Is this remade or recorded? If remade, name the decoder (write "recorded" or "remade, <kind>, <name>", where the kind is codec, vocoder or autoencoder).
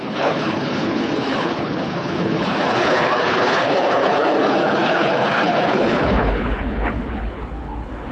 remade, codec, HILCodec